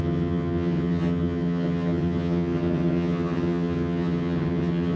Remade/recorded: remade